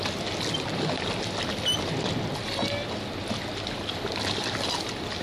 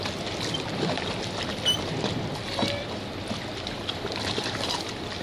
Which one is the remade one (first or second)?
second